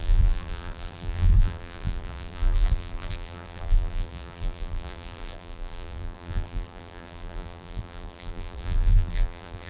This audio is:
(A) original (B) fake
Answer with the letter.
B